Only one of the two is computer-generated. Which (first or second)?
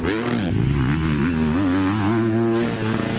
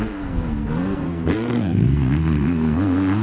second